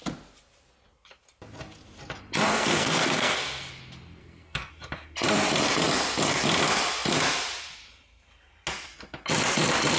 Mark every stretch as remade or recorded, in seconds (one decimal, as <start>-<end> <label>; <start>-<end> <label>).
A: 0.0-2.5 recorded; 2.5-3.7 remade; 3.7-4.2 recorded; 4.2-4.7 remade; 4.7-10.0 recorded